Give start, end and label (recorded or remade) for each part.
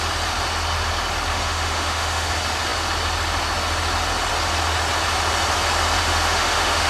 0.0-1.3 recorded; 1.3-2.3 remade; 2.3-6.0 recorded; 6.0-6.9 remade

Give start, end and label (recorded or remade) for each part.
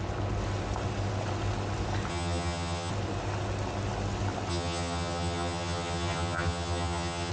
0.0-2.1 recorded; 2.1-2.9 remade; 2.9-4.5 recorded; 4.5-7.3 remade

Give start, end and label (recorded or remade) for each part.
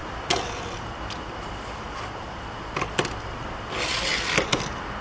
0.0-5.0 recorded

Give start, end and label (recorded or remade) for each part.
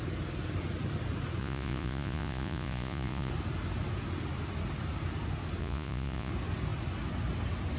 0.0-1.4 recorded; 1.4-3.3 remade; 3.3-5.6 recorded; 5.6-6.3 remade; 6.3-7.8 recorded